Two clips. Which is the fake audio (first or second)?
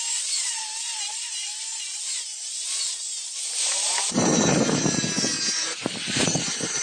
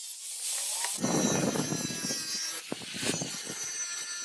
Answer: first